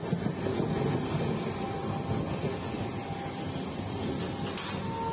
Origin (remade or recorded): recorded